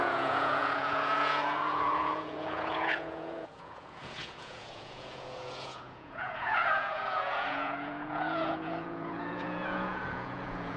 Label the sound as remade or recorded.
remade